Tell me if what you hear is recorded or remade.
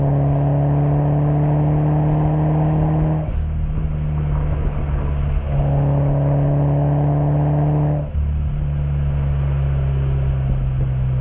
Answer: recorded